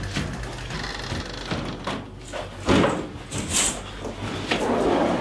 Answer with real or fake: real